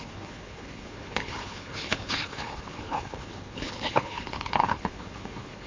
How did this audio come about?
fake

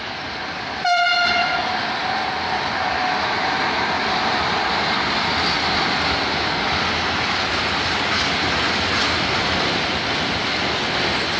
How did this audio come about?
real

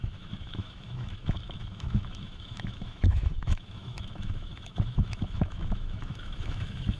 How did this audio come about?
fake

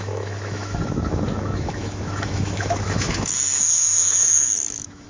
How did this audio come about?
fake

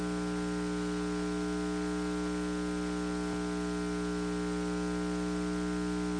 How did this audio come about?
real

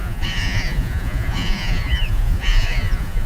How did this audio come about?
fake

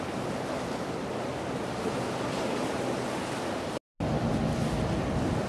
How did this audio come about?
real